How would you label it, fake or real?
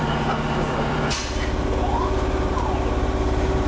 real